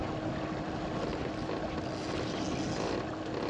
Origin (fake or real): real